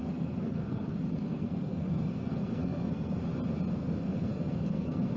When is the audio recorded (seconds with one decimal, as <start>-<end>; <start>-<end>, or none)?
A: 3.2-3.7